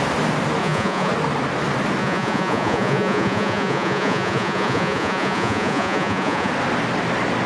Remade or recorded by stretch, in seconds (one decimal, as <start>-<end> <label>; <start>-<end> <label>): 0.0-0.6 recorded; 0.6-1.1 remade; 1.1-2.0 recorded; 2.0-6.5 remade; 6.5-7.5 recorded